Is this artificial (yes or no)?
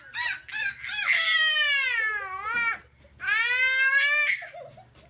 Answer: no